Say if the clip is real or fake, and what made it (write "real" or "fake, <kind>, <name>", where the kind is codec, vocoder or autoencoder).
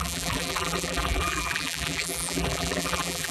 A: fake, vocoder, BigVGAN v2